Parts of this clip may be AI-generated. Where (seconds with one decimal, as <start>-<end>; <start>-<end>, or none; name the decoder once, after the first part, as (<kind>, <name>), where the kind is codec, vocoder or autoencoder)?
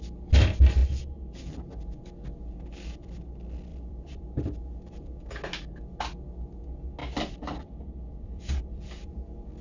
3.7-5.4 (vocoder, BigVGAN v2); 7.0-9.1